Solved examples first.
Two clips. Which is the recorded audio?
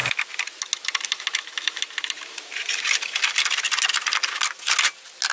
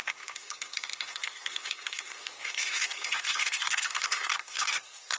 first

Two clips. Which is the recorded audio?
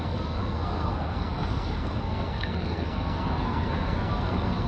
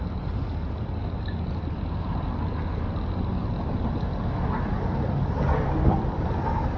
second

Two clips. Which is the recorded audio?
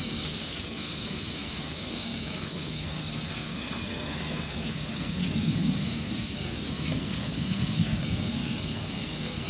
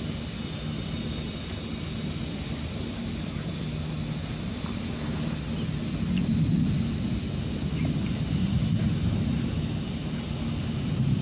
second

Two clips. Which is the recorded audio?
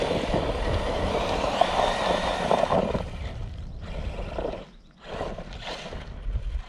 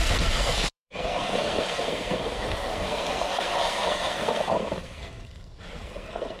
first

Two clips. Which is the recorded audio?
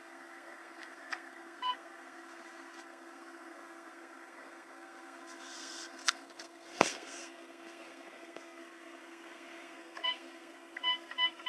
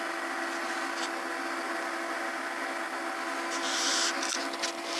second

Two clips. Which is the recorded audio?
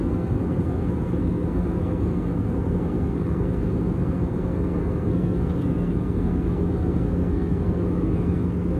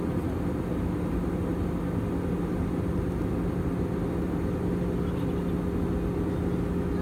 second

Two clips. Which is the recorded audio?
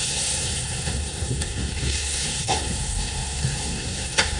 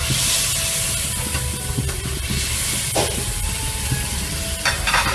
second